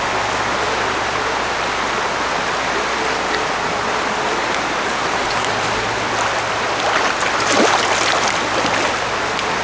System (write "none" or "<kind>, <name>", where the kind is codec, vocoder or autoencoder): none